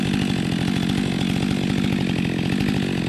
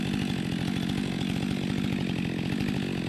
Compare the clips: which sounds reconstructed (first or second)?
second